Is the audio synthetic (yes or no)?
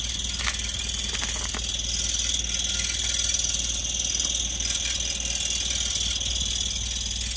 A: no